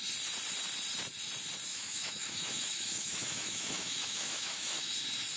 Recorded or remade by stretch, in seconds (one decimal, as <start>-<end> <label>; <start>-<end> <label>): 0.0-1.7 recorded; 1.7-4.9 remade; 4.9-5.4 recorded